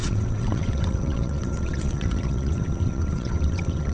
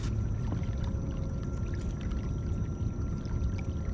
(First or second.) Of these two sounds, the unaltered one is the second